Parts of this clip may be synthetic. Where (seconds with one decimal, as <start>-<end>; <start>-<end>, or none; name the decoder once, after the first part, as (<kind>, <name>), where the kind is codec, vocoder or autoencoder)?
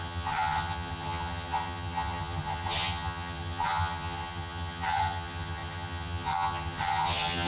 0.0-7.5 (vocoder, HiFi-GAN)